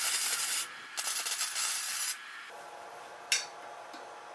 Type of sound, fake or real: real